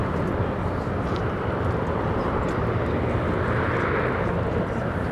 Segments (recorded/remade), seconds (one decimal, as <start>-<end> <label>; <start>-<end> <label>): 0.0-5.1 recorded